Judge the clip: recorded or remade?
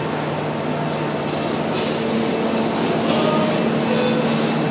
recorded